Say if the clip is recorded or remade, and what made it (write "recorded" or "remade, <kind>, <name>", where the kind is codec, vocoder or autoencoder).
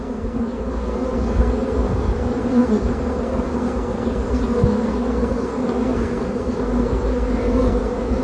remade, codec, SNAC